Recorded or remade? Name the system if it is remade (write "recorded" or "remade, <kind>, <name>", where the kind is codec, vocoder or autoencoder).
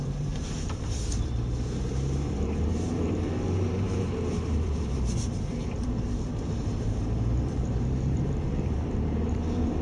remade, vocoder, BigVGAN v2